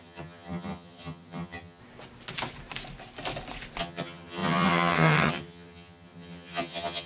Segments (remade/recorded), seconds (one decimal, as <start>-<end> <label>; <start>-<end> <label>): 0.0-1.8 remade; 1.8-3.8 recorded; 3.8-7.1 remade